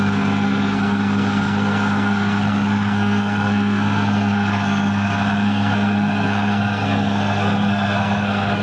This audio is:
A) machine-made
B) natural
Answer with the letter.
A